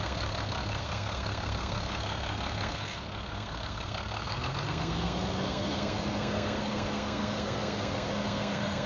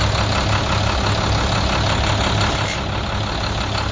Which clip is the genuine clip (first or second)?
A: second